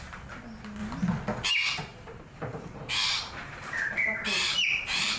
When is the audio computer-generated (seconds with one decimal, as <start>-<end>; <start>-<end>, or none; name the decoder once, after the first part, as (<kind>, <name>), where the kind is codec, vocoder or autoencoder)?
1.9-5.2 (vocoder, BigVGAN v2)